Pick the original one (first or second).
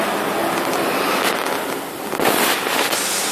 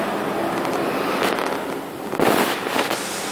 first